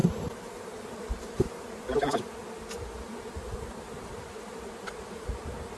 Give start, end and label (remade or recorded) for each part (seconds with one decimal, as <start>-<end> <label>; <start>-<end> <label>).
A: 0.0-2.3 remade; 2.3-5.8 recorded